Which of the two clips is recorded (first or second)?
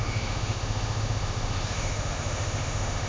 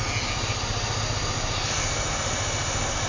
second